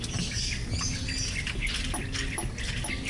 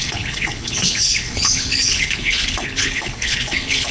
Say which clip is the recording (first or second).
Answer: first